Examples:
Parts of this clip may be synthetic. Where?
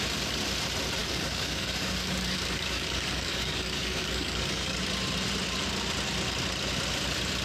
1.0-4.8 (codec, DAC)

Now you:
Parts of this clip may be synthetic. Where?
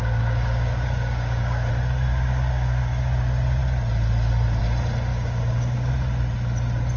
0.0-1.7 (codec, DAC); 2.1-2.8; 5.1-5.9